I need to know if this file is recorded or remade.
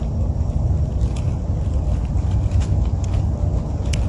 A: recorded